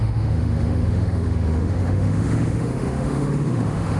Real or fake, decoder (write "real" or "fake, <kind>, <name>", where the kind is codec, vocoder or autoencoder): fake, autoencoder, DAC-VAE